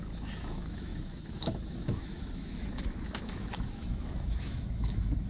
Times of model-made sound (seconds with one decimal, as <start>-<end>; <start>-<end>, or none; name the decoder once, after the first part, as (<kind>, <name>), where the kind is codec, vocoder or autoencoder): 0.0-5.3 (autoencoder, DAC-VAE)